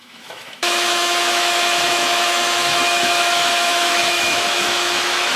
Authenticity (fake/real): fake